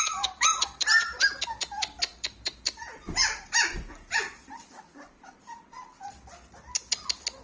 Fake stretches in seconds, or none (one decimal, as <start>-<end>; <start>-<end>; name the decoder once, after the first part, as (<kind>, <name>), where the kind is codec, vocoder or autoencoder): 2.1-4.6 (vocoder, BigVGAN v2)